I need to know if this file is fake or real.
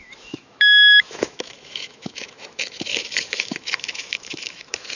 fake